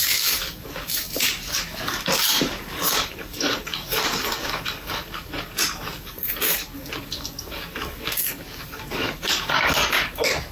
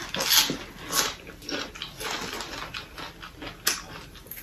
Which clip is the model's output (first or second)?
first